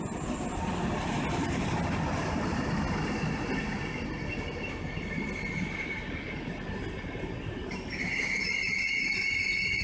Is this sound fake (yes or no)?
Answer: no